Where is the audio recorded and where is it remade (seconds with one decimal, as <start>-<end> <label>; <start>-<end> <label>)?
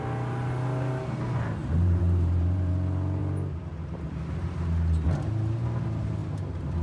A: 0.0-1.6 recorded; 1.6-2.7 remade; 2.7-6.8 recorded